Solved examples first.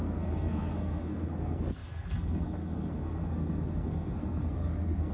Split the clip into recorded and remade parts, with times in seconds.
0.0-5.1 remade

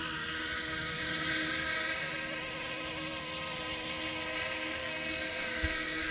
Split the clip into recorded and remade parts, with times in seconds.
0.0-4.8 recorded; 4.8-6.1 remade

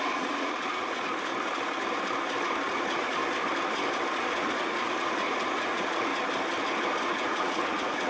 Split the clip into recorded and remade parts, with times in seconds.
0.0-1.3 remade; 1.3-2.8 recorded; 2.8-3.2 remade; 3.2-4.2 recorded; 4.2-6.1 remade; 6.1-7.0 recorded; 7.0-8.1 remade

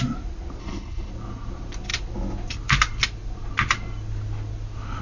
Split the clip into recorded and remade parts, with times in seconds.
0.0-0.6 recorded; 0.6-1.1 remade; 1.1-5.0 recorded

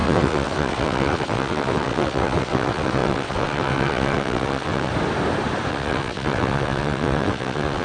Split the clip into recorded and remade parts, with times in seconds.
0.0-4.9 remade; 4.9-5.7 recorded; 5.7-7.8 remade

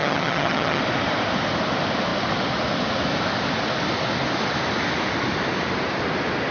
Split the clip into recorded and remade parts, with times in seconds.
0.0-0.8 remade; 0.8-6.5 recorded

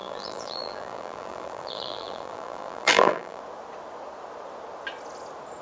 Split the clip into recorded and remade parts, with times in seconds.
0.0-3.4 remade; 3.4-5.6 recorded